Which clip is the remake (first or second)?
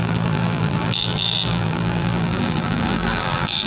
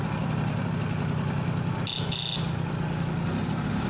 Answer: first